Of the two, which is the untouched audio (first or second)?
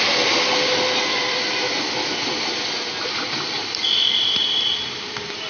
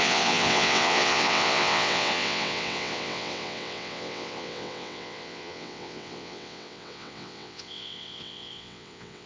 first